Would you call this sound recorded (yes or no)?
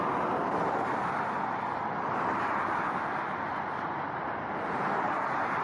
yes